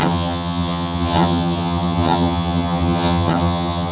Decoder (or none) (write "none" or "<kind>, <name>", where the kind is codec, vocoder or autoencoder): vocoder, HiFi-GAN